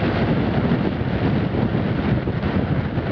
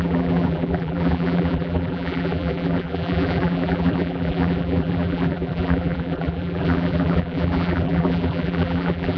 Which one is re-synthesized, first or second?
second